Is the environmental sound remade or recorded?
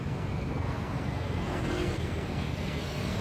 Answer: remade